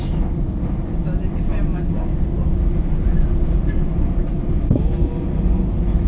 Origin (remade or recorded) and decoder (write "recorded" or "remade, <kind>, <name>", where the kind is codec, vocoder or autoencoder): recorded